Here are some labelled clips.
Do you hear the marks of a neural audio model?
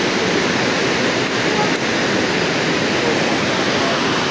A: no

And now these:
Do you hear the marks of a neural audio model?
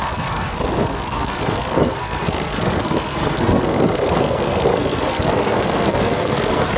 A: yes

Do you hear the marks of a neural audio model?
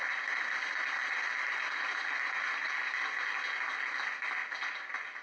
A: no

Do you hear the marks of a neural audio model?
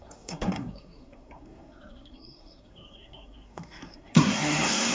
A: yes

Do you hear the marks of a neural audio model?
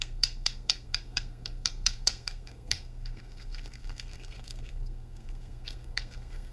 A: yes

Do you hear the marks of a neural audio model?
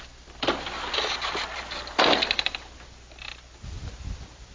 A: no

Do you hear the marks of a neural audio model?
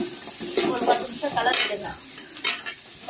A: no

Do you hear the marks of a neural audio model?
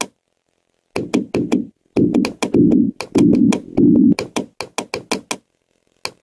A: no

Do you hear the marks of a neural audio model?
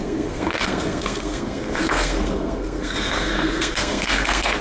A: yes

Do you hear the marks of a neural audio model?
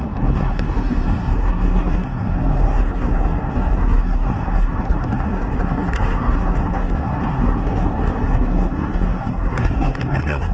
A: yes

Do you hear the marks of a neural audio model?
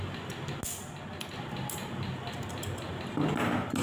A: no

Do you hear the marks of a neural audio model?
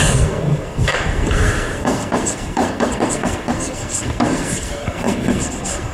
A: yes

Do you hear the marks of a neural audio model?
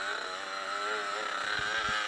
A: no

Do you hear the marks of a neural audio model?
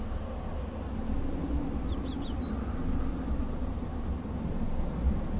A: no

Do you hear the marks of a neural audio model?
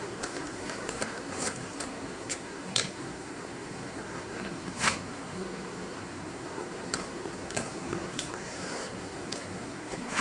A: yes